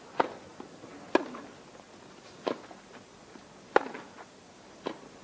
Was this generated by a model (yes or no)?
no